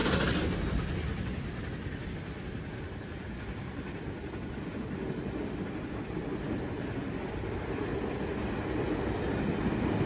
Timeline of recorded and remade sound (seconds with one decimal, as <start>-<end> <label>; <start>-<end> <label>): 0.0-10.1 recorded